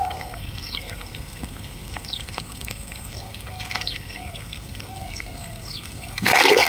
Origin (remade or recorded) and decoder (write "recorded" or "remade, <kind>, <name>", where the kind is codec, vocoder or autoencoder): remade, codec, SNAC